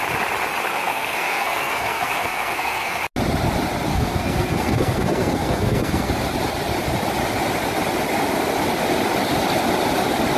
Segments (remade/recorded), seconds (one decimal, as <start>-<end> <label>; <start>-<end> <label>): 0.0-0.7 recorded; 0.7-3.0 remade; 3.0-3.9 recorded; 3.9-6.1 remade; 6.1-10.4 recorded